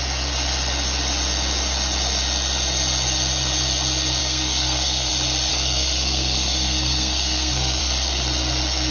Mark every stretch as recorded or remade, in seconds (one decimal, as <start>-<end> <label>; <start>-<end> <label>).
0.0-4.2 recorded; 4.2-5.1 remade; 5.1-5.5 recorded; 5.5-7.8 remade; 7.8-8.9 recorded